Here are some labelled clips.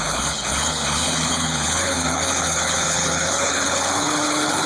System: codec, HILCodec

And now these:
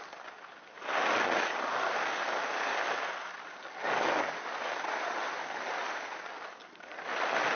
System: none